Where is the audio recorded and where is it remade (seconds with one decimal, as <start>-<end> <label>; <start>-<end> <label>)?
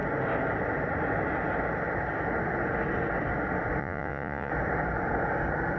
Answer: 0.0-3.8 recorded; 3.8-4.5 remade; 4.5-5.8 recorded